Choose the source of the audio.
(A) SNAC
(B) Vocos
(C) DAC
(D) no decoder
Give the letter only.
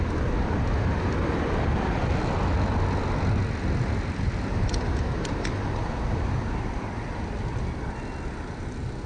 D